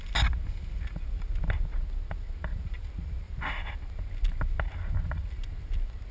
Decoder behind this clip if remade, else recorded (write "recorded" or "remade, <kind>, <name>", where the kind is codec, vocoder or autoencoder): recorded